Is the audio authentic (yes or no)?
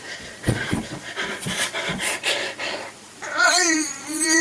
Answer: no